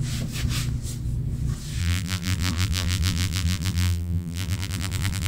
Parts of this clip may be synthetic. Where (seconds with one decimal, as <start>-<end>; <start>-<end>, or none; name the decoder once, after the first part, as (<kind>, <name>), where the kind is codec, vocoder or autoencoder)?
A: 1.8-5.3 (vocoder, BigVGAN v2)